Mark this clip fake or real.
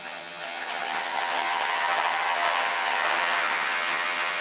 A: fake